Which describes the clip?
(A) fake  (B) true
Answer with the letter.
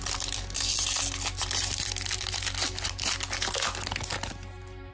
B